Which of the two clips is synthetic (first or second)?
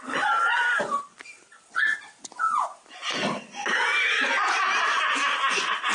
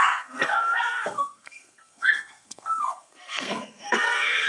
second